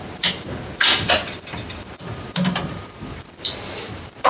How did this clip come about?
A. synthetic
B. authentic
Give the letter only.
A